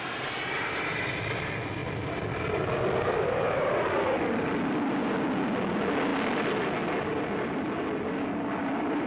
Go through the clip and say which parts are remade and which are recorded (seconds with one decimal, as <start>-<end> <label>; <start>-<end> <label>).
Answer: 0.0-9.1 recorded